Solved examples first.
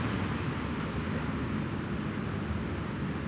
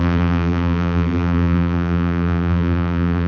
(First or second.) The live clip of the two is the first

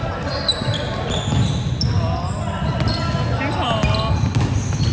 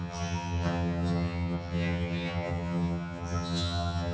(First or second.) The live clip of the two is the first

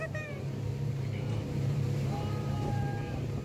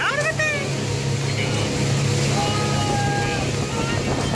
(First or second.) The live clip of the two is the second